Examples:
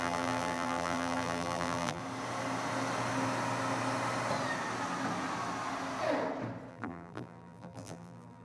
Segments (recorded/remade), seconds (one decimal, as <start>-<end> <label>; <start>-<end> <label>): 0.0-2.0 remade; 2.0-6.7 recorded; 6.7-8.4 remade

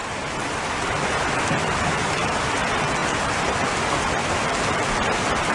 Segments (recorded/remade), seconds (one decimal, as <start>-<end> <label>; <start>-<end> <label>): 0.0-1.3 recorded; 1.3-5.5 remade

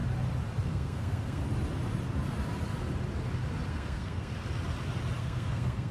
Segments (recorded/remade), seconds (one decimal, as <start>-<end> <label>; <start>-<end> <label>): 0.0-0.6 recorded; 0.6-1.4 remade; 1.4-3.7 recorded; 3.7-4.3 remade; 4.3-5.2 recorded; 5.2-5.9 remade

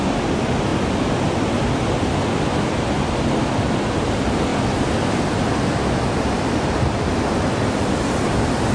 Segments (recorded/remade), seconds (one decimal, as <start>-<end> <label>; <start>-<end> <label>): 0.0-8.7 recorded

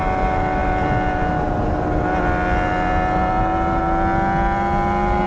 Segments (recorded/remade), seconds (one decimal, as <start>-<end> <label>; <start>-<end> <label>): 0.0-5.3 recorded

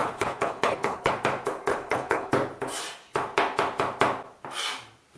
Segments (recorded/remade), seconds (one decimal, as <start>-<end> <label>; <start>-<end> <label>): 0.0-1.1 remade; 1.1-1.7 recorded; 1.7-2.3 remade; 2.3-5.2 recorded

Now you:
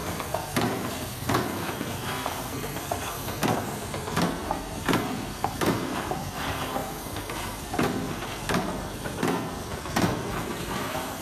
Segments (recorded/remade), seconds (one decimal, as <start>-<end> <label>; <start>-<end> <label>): 0.0-11.2 remade